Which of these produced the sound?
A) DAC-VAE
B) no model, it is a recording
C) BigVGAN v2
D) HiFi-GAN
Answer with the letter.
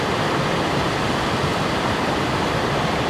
B